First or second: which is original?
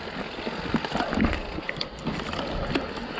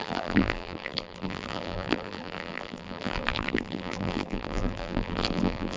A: first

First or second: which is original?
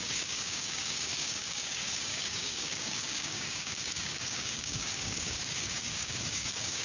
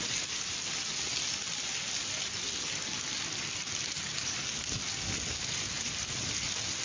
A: second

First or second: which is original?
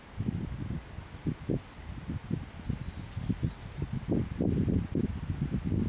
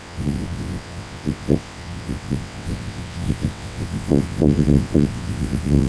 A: first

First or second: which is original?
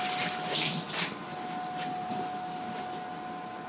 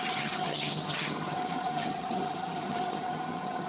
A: first